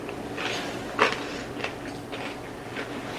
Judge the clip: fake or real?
real